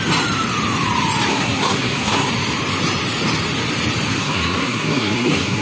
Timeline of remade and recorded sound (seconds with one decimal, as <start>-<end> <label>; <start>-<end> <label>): 0.0-1.3 recorded; 1.3-2.3 remade; 2.3-4.1 recorded; 4.1-5.6 remade